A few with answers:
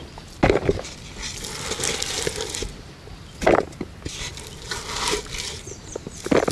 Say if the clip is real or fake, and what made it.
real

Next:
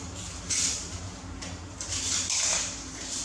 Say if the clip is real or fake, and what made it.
fake, vocoder, BigVGAN v2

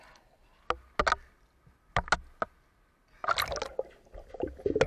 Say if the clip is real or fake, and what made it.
real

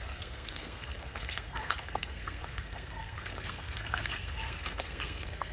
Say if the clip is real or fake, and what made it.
fake, codec, SNAC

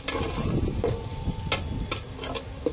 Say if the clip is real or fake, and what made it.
real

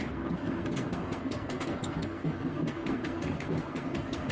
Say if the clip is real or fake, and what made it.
fake, codec, SNAC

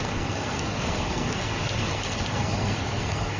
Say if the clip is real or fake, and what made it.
fake, codec, SNAC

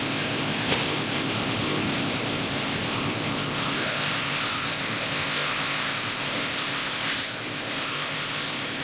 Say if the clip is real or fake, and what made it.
fake, codec, ZipCodec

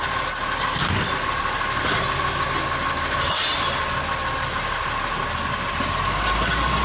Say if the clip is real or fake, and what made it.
real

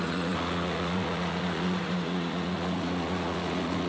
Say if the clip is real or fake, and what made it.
fake, vocoder, Vocos